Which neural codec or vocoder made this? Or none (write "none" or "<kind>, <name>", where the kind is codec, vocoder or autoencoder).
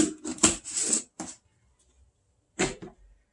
vocoder, BigVGAN v2